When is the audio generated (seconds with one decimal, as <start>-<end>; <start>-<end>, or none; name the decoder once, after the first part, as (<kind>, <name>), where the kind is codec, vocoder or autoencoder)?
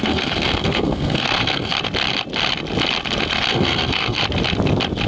0.0-1.7 (codec, SNAC); 3.5-4.2